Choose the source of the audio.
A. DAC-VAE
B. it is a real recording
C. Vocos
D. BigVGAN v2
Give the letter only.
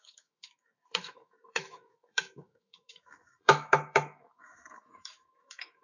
A